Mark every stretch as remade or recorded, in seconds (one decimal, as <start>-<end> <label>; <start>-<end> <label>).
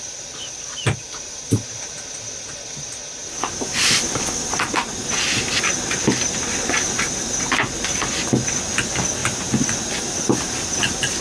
0.0-9.2 recorded; 9.2-9.9 remade; 9.9-11.2 recorded